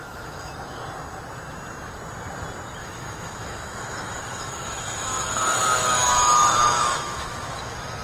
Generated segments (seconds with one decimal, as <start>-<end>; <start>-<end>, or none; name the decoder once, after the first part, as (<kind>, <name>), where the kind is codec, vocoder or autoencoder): 0.0-0.5 (autoencoder, DAC-VAE); 2.8-7.6